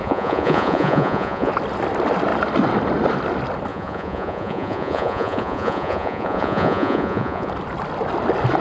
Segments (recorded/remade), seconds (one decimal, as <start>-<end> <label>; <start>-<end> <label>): 0.0-1.5 remade; 1.5-3.7 recorded; 3.7-7.5 remade; 7.5-8.6 recorded